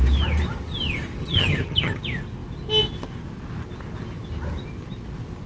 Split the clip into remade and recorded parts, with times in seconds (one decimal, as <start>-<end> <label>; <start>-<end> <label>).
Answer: 0.0-1.2 recorded; 1.2-2.0 remade; 2.0-5.5 recorded